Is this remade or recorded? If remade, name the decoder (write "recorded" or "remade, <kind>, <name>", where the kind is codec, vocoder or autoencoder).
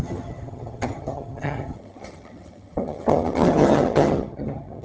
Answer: remade, vocoder, HiFi-GAN